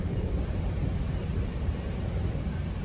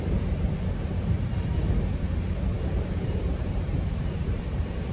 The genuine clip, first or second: first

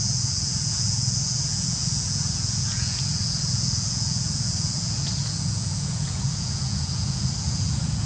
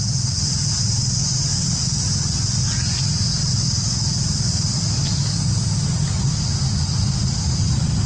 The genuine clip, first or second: second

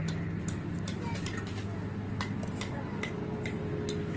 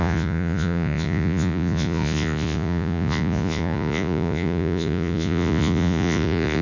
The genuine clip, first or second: first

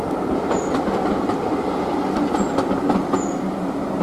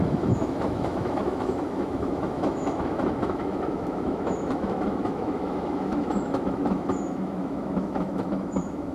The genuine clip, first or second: first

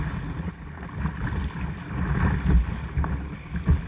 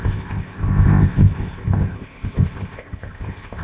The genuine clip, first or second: first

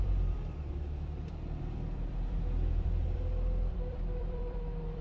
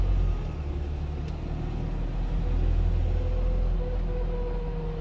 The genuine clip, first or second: second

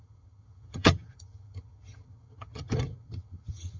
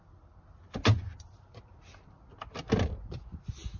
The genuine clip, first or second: second